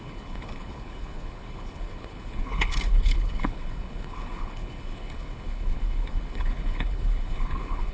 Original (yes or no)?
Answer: no